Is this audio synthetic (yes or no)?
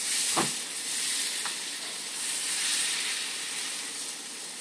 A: no